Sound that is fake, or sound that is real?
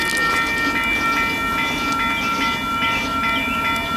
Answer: real